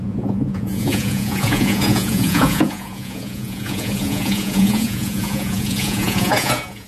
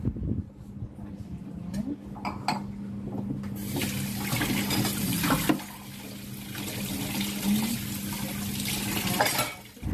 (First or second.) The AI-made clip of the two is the first